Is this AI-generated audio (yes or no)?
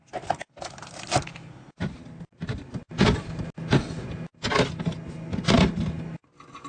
no